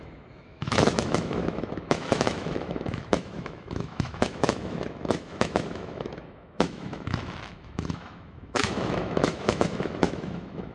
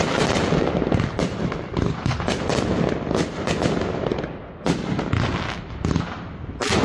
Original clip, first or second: second